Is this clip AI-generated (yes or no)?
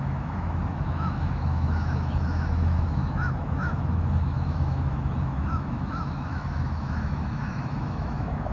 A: yes